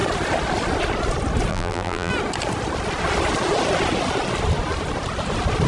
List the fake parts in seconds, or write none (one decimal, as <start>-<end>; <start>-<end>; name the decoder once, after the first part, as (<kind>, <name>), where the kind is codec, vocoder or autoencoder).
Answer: 1.5-2.1 (vocoder, BigVGAN v2)